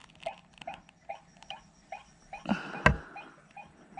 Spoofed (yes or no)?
no